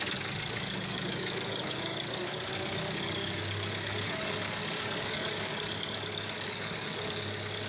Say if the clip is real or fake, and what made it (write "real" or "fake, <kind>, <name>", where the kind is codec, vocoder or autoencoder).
fake, codec, DAC